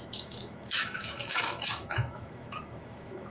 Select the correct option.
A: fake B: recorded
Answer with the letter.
A